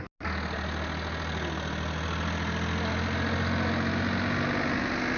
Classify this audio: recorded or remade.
recorded